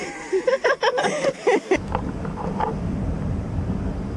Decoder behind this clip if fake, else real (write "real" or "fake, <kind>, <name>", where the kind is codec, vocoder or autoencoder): real